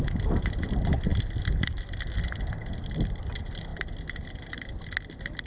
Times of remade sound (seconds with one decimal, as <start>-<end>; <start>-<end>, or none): none